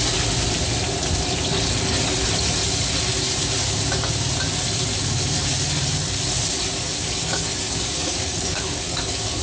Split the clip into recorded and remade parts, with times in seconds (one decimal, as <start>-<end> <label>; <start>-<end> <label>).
0.0-6.7 recorded; 6.7-9.4 remade

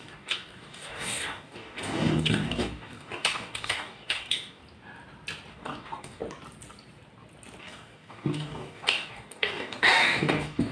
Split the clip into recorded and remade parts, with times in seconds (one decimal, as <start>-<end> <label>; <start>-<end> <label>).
0.0-4.6 remade; 4.6-5.5 recorded; 5.5-6.2 remade; 6.2-7.6 recorded; 7.6-10.7 remade

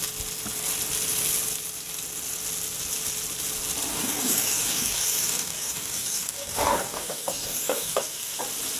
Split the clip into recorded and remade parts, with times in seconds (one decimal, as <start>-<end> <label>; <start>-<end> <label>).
0.0-3.9 recorded; 3.9-8.4 remade; 8.4-8.8 recorded

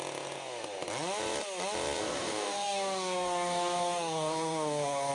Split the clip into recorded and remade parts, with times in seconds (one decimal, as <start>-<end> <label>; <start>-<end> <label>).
0.0-2.0 recorded; 2.0-5.1 remade